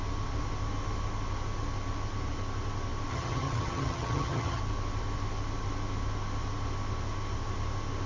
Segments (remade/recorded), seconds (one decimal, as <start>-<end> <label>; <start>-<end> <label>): 0.0-3.1 recorded; 3.1-4.6 remade; 4.6-8.1 recorded